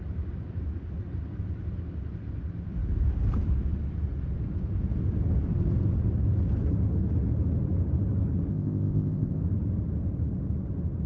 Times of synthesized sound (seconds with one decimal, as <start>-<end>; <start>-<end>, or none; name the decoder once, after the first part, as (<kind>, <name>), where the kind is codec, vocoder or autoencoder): 8.5-9.4 (codec, ZipCodec)